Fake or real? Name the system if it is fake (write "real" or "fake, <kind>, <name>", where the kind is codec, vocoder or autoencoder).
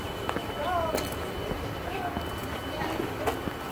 real